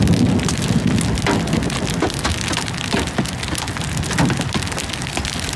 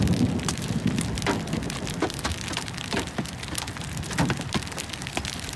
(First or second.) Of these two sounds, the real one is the first